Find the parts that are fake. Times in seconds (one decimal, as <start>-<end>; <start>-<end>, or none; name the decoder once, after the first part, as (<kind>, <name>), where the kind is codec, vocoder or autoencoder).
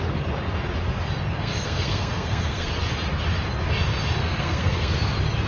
1.4-2.7 (codec, SNAC); 4.2-4.9